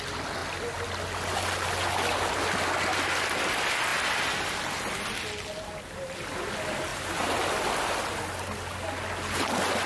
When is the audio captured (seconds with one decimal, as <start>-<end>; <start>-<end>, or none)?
0.0-9.9